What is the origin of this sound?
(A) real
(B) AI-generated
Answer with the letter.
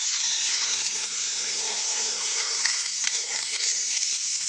B